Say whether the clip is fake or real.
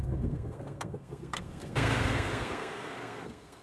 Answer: fake